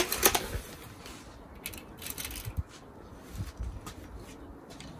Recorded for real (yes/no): yes